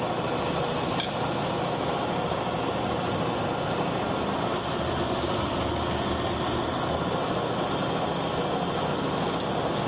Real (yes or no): yes